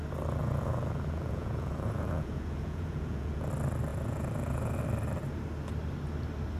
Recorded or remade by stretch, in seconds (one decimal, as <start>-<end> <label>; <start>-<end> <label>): 0.0-0.4 recorded; 0.4-3.5 remade; 3.5-3.9 recorded; 3.9-4.8 remade; 4.8-6.6 recorded